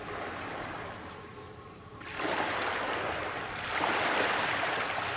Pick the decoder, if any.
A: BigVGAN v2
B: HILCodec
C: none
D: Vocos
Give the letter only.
C